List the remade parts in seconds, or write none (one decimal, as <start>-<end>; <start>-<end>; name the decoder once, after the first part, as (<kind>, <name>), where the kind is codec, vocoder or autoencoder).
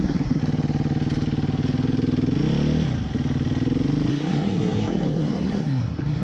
0.0-0.4 (codec, SNAC); 4.1-6.2